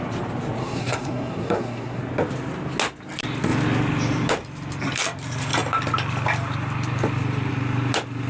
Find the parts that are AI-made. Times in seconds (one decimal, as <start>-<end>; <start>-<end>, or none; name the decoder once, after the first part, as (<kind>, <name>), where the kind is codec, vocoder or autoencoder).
0.6-2.0 (codec, SNAC)